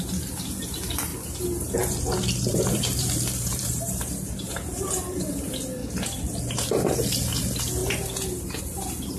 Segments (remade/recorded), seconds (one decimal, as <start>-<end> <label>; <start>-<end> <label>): 0.0-1.1 remade; 1.1-1.7 recorded; 1.7-7.8 remade; 7.8-8.6 recorded; 8.6-9.2 remade